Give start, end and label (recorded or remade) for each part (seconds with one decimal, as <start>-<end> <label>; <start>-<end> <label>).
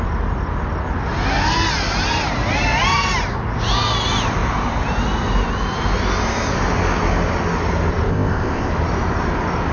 0.0-8.1 recorded; 8.1-8.7 remade; 8.7-9.7 recorded